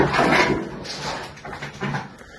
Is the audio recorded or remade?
recorded